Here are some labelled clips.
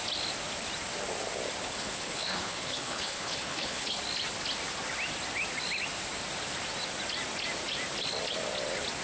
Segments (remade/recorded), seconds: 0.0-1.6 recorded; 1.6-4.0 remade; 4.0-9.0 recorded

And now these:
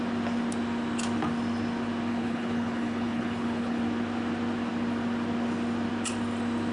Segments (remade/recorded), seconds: 0.0-2.1 recorded; 2.1-3.8 remade; 3.8-6.7 recorded

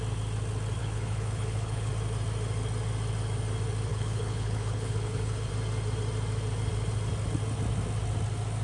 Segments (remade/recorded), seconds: 0.0-0.8 recorded; 0.8-1.9 remade; 1.9-3.9 recorded; 3.9-5.5 remade; 5.5-8.6 recorded

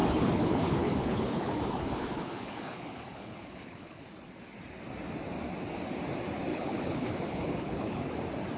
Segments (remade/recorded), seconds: 0.0-4.0 remade; 4.0-6.5 recorded; 6.5-8.1 remade; 8.1-8.6 recorded

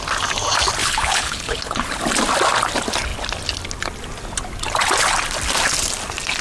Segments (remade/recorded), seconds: 0.0-0.8 recorded; 0.8-2.0 remade; 2.0-6.4 recorded

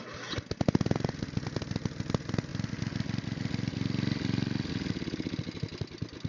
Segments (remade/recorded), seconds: 0.0-6.3 recorded

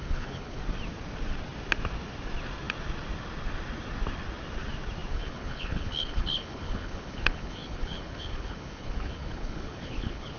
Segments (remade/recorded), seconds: 0.0-0.6 remade; 0.6-5.1 recorded; 5.1-10.4 remade